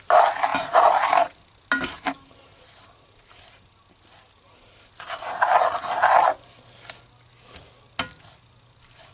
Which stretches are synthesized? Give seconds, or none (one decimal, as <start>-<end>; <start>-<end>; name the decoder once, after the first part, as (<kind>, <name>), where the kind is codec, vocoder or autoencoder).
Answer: none